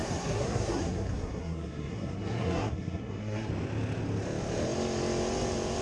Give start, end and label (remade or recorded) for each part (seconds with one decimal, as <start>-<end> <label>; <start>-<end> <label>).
0.0-3.5 remade; 3.5-5.8 recorded